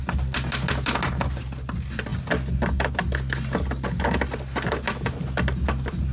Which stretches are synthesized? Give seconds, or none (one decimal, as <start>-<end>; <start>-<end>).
none